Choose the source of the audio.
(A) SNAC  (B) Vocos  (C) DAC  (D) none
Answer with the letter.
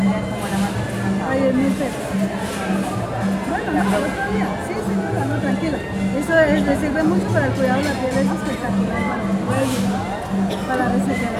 D